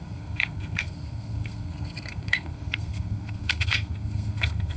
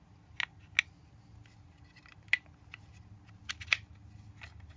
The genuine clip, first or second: second